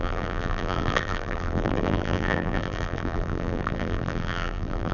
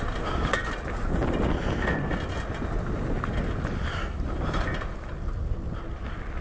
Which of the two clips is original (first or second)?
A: second